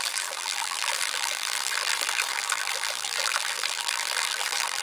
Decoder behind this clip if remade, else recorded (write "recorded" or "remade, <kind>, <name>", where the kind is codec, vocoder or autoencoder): remade, vocoder, BigVGAN v2